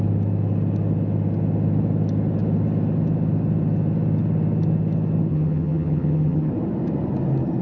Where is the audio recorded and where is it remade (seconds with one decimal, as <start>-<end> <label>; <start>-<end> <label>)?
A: 0.0-5.3 recorded; 5.3-6.5 remade; 6.5-7.6 recorded